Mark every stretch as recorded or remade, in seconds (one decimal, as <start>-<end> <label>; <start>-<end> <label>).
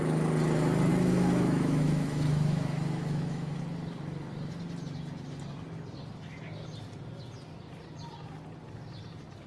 0.0-0.9 recorded; 0.9-3.6 remade; 3.6-9.5 recorded